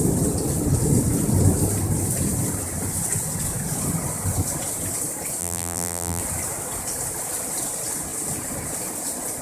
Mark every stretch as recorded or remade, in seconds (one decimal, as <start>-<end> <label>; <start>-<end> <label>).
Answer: 0.0-5.4 recorded; 5.4-6.2 remade; 6.2-9.4 recorded